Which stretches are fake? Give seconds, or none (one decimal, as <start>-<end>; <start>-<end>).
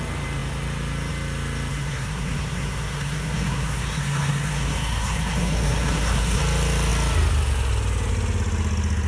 1.7-6.4